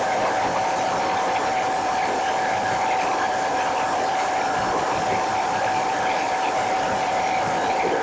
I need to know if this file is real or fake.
fake